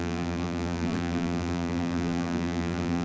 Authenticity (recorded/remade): remade